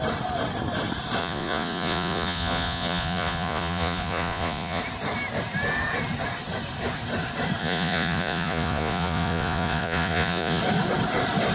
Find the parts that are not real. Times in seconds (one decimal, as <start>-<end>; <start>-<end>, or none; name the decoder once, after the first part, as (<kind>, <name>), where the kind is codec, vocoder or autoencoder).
1.2-4.8 (vocoder, Vocos); 7.6-10.6